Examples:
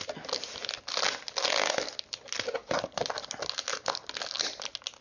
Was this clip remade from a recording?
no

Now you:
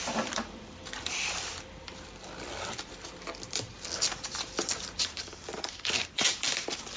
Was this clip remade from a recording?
yes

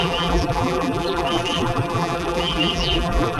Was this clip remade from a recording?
yes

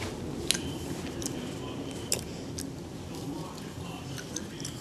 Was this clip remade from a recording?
no